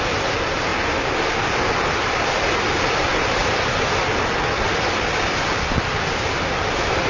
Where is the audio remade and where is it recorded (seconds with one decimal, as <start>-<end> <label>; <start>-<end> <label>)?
0.0-0.7 remade; 0.7-1.9 recorded; 1.9-7.1 remade